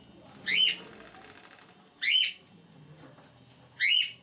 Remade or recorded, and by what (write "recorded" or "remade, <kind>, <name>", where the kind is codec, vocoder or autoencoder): recorded